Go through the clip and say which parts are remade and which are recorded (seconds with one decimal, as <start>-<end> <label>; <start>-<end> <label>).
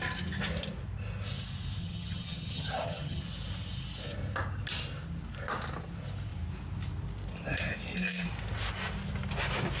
0.0-1.8 recorded; 1.8-3.2 remade; 3.2-9.8 recorded